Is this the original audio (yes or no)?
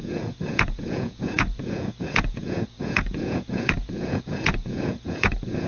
no